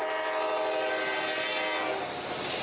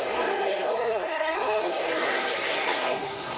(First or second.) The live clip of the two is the first